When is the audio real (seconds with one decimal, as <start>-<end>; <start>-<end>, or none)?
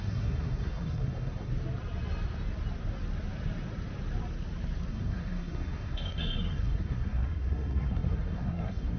1.5-4.9